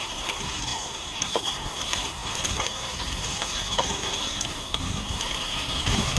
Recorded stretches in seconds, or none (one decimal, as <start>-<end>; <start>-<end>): none